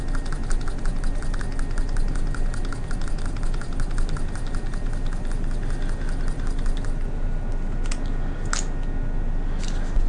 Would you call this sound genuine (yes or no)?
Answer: yes